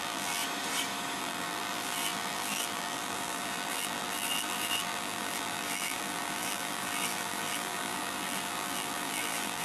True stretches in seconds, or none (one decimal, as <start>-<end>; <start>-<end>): 0.4-1.2